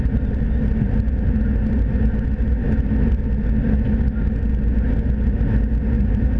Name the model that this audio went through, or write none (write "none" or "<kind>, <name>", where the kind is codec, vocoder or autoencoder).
none